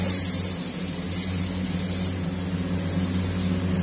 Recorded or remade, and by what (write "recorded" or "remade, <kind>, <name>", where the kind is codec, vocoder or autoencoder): recorded